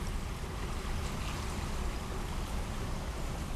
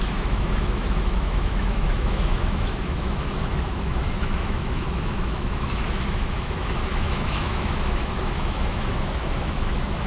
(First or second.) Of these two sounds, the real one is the first